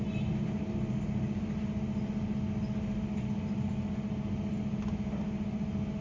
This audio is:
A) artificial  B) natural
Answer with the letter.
B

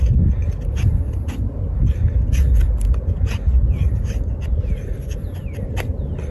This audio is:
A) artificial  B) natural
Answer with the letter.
B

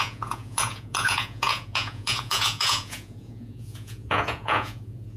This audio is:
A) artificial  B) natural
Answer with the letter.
A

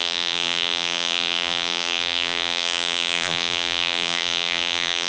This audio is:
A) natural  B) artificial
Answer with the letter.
B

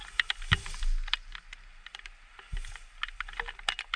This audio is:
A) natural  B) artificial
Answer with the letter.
A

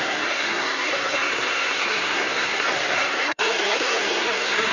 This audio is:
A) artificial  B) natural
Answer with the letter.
A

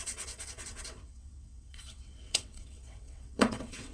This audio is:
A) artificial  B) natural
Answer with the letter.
A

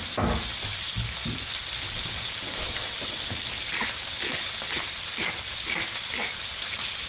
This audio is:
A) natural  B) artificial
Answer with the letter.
A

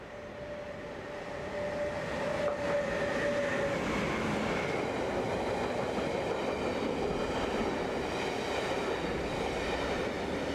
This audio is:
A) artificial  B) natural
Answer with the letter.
B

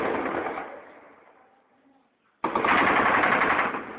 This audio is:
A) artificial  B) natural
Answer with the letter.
B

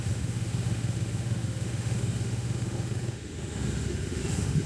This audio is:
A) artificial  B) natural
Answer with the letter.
A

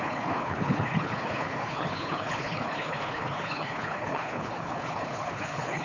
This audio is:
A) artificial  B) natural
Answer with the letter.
A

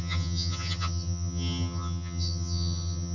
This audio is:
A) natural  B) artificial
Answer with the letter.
B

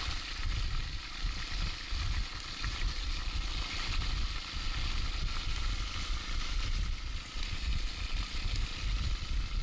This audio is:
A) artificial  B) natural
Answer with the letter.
B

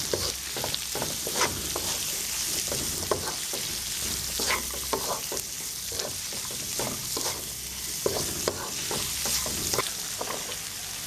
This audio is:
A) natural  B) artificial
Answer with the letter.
A